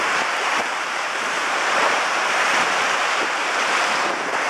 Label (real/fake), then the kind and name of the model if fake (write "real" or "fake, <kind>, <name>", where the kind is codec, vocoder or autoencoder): fake, vocoder, BigVGAN v2